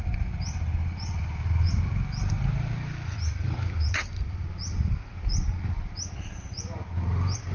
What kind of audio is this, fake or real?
real